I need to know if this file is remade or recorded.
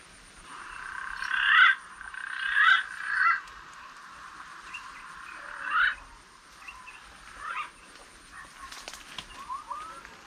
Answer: recorded